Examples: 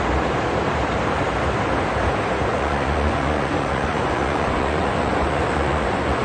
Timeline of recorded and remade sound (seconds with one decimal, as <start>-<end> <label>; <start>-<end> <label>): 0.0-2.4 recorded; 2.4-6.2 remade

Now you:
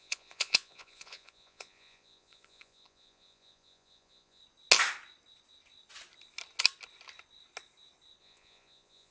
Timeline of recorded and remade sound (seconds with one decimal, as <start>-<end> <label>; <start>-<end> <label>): 0.0-4.4 remade; 4.4-8.2 recorded; 8.2-9.1 remade

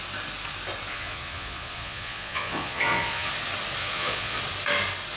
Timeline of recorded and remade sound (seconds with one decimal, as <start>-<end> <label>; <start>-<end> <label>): 0.0-0.9 recorded; 0.9-3.3 remade; 3.3-3.8 recorded; 3.8-4.4 remade; 4.4-5.2 recorded

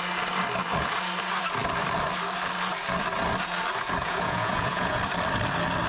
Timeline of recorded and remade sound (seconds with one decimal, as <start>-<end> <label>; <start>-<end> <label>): 0.0-4.0 recorded; 4.0-5.0 remade; 5.0-5.9 recorded